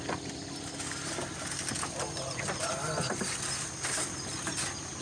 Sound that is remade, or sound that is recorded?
recorded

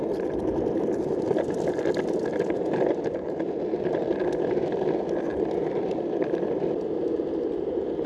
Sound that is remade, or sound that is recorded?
recorded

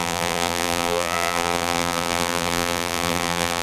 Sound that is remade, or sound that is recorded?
remade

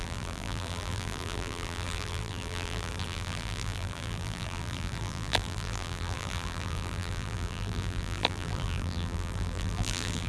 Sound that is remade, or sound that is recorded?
remade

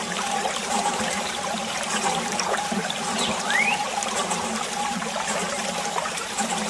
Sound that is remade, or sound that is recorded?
remade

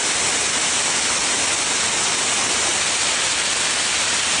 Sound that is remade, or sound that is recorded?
recorded